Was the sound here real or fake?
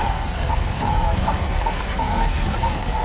fake